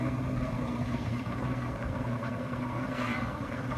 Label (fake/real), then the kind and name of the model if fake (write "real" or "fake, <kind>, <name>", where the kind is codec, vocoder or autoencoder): fake, codec, SNAC